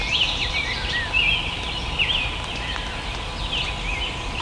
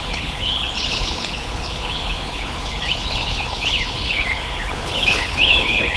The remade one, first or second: second